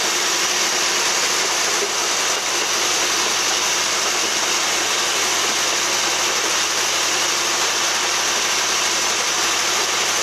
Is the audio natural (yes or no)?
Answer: yes